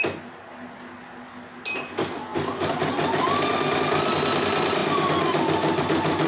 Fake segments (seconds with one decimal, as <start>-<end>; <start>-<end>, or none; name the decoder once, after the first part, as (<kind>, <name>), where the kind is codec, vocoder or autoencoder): none